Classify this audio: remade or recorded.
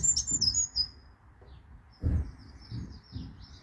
recorded